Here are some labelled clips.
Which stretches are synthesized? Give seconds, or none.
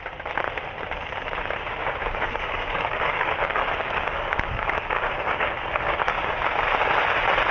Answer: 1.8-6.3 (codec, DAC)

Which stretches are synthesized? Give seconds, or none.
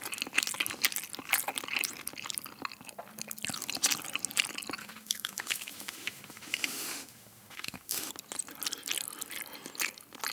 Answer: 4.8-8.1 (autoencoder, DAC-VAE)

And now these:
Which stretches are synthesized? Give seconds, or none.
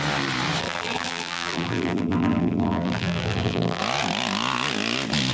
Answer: 0.6-3.8 (vocoder, BigVGAN v2)